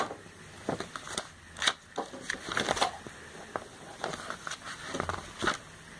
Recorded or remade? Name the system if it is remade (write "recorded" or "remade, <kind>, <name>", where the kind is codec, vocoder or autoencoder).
recorded